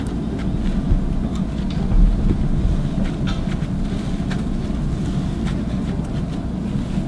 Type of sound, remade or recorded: recorded